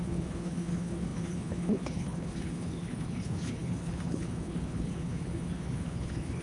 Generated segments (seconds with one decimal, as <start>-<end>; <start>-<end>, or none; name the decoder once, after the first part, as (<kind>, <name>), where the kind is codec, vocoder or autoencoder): 0.0-6.4 (codec, HILCodec)

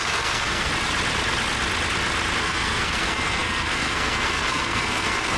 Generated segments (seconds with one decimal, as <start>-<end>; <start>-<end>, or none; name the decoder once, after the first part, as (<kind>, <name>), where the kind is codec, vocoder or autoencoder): 0.0-0.7 (codec, SNAC); 2.4-5.4

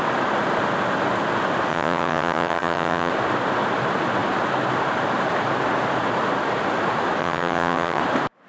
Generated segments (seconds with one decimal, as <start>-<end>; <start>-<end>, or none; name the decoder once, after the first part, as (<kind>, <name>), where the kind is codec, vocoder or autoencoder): 1.7-3.1 (vocoder, HiFi-GAN); 7.2-8.0

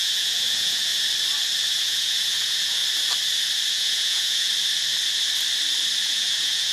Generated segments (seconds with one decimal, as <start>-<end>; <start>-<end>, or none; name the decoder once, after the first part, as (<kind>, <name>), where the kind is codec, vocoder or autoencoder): 0.0-0.9 (vocoder, Vocos); 1.7-2.8; 3.7-4.5; 6.0-6.7

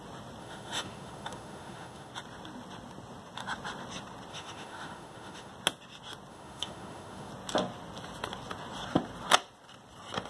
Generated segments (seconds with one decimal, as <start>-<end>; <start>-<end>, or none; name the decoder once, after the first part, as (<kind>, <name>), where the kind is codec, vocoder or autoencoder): 0.4-2.1 (autoencoder, DAC-VAE); 4.3-5.5; 6.3-7.3

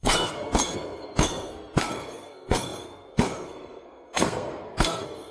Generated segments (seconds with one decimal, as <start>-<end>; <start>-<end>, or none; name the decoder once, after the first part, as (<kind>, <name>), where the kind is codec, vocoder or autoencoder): 0.0-5.3 (codec, SNAC)